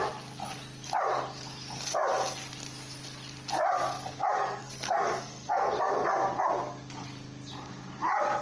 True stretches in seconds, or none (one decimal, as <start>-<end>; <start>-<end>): 0.0-4.4; 5.9-8.4